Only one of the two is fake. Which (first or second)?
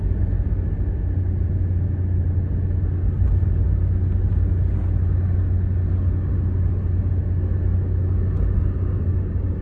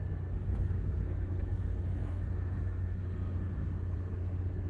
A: second